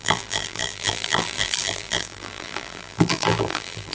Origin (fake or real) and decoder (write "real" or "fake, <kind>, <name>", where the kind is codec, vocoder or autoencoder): fake, vocoder, BigVGAN v2